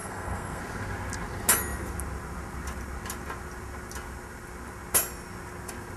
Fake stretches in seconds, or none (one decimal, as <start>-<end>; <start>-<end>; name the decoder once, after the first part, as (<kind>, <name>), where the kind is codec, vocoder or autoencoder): 0.0-0.6 (codec, SNAC)